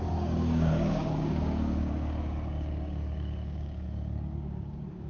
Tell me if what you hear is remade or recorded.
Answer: remade